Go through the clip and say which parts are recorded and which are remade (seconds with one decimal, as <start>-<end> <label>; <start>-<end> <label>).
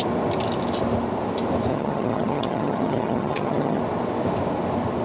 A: 0.0-1.7 recorded; 1.7-3.8 remade; 3.8-5.0 recorded